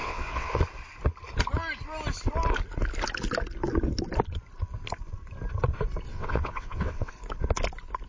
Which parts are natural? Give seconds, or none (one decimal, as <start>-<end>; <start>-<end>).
0.6-6.1; 7.1-8.1